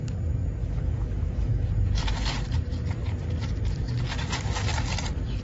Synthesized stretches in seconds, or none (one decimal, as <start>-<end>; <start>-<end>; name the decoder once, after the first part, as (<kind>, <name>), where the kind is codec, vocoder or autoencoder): 0.6-1.7 (autoencoder, DAC-VAE)